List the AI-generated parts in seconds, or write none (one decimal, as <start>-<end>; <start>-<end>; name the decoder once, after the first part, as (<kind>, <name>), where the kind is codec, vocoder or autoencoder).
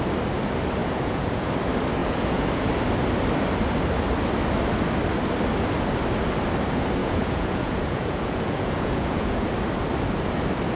0.8-1.5 (vocoder, Vocos); 2.0-2.7; 7.0-9.5